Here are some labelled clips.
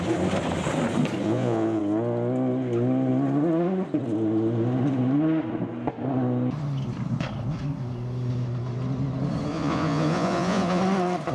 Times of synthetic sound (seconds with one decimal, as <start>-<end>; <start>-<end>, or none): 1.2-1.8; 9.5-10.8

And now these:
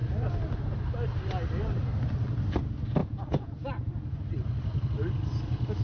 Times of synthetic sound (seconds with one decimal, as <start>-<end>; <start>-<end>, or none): 3.0-3.6

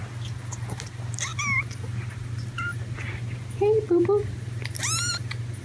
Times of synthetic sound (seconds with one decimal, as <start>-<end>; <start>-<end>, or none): none

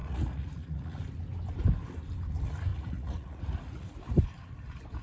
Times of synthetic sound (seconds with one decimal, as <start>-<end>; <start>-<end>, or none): 0.0-1.0; 2.7-4.0